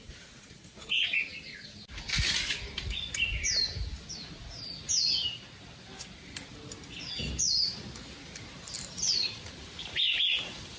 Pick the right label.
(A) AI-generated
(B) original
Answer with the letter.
B